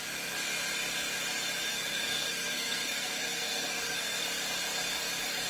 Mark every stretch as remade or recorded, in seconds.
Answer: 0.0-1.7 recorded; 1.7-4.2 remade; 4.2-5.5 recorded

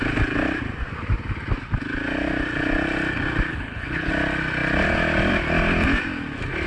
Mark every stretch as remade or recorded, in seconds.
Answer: 0.0-3.5 recorded; 3.5-4.1 remade; 4.1-6.7 recorded